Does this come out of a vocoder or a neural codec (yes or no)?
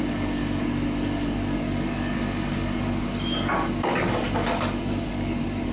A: yes